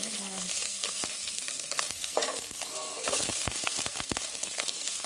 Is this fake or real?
fake